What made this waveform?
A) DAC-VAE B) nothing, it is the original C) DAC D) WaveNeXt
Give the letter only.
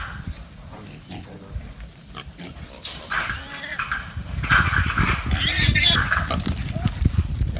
B